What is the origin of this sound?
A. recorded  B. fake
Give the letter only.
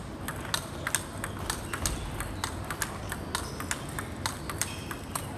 A